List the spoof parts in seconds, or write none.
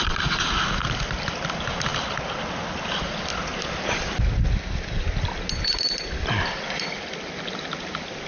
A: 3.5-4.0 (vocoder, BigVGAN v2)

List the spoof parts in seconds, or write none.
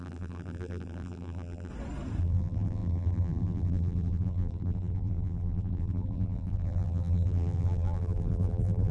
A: 0.0-1.7 (vocoder, BigVGAN v2); 2.2-8.9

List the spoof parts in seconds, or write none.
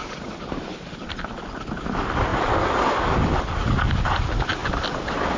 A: 0.0-1.4 (vocoder, BigVGAN v2); 2.3-3.4; 4.6-5.4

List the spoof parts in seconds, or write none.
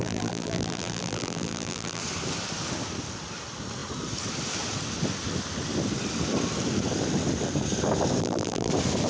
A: 0.0-2.0 (vocoder, BigVGAN v2); 8.2-8.7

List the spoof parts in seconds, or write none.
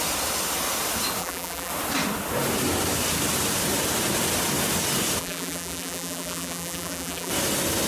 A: 1.2-1.7 (vocoder, BigVGAN v2); 5.2-7.3